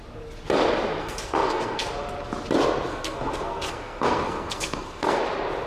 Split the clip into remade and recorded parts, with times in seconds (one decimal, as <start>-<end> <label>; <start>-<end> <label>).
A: 0.0-1.0 recorded; 1.0-1.9 remade; 1.9-2.9 recorded; 2.9-5.2 remade; 5.2-5.7 recorded